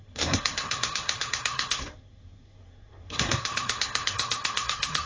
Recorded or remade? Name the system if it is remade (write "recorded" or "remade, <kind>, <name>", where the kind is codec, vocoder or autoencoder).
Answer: remade, codec, SNAC